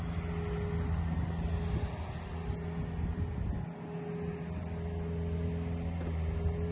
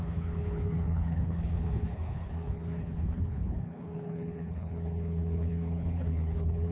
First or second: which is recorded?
first